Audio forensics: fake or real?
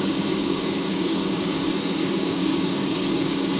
fake